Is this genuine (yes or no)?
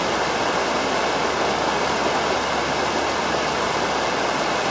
yes